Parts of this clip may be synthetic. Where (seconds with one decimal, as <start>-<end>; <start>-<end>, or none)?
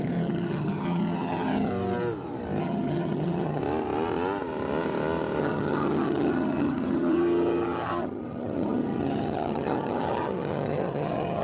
0.0-1.7; 2.6-3.6; 5.4-11.4